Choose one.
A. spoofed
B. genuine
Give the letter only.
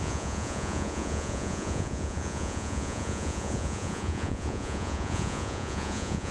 A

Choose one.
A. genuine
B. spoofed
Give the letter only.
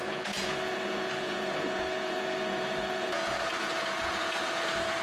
B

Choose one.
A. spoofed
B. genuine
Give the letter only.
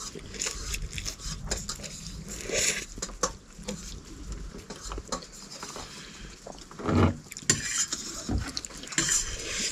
B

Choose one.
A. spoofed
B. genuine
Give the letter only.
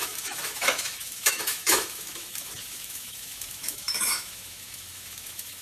A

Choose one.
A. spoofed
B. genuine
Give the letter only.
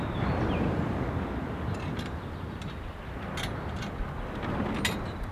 B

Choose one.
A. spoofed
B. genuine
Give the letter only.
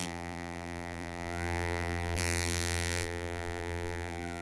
A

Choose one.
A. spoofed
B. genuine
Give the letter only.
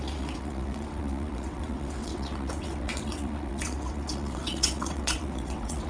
A